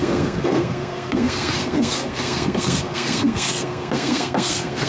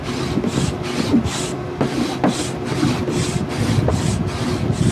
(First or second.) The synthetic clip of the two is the first